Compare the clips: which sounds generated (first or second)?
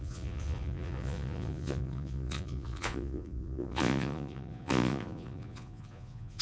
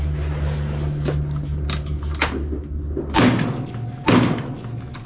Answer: first